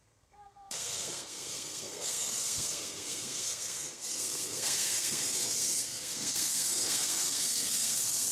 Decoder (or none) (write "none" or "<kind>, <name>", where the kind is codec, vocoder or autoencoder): codec, SNAC